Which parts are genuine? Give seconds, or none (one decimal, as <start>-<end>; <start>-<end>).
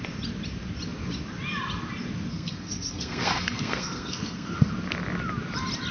0.0-2.3; 4.7-5.9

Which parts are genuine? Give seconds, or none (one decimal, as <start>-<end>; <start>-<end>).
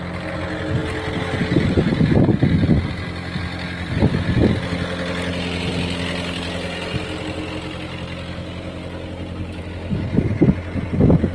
0.0-11.3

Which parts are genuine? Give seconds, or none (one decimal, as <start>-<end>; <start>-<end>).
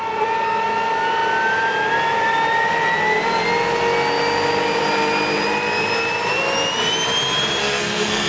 0.0-7.6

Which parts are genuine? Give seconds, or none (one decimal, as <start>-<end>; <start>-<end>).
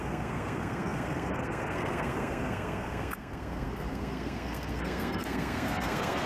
none